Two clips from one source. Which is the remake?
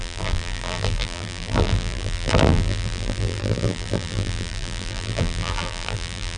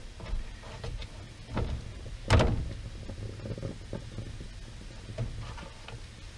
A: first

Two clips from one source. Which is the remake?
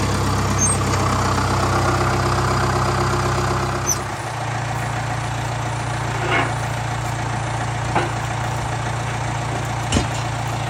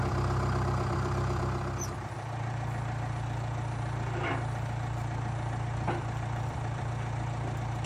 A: second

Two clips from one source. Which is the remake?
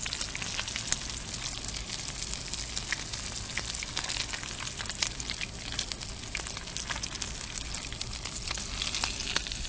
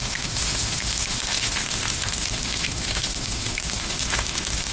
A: second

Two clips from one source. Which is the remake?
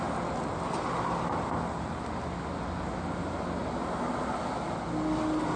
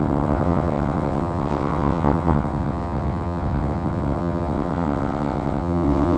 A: second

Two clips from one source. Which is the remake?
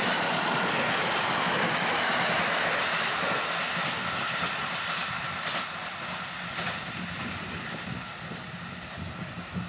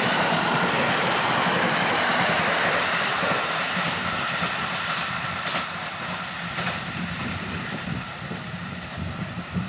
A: second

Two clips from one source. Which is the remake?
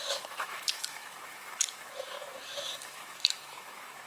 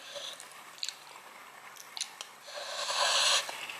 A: first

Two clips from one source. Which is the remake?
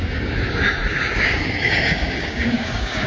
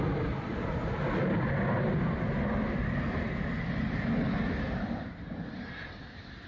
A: first